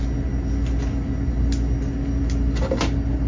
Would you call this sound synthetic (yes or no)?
no